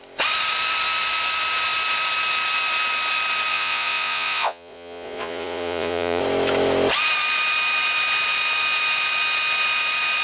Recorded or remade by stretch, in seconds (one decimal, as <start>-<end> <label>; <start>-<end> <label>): 0.0-3.5 recorded; 3.5-6.2 remade; 6.2-10.2 recorded